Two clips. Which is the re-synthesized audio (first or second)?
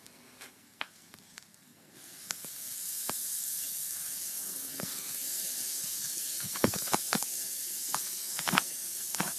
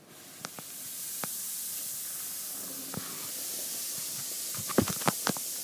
first